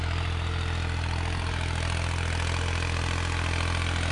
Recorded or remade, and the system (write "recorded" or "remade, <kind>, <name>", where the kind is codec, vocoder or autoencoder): recorded